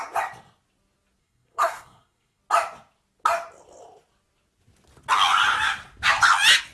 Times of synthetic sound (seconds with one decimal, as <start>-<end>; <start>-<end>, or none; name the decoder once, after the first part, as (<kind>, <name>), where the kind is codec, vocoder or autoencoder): 1.2-2.4 (codec, SNAC)